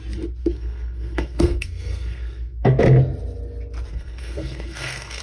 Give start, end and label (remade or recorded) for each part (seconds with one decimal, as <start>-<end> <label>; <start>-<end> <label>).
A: 0.0-0.4 recorded; 0.4-2.8 remade; 2.8-3.9 recorded; 3.9-5.2 remade